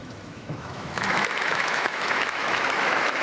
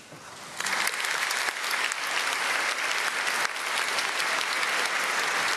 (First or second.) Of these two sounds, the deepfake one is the first